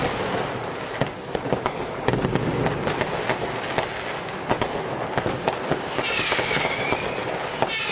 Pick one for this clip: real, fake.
real